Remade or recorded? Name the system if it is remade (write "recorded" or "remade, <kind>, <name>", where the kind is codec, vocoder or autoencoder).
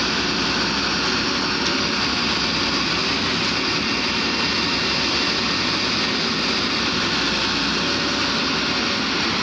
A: recorded